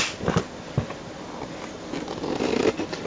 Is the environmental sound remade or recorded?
recorded